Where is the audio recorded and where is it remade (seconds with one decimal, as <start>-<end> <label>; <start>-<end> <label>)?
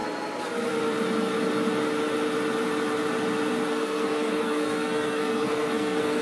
0.0-3.7 recorded; 3.7-6.2 remade